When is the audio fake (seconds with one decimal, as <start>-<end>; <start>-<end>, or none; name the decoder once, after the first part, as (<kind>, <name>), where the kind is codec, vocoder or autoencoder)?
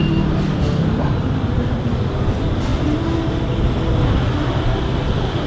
none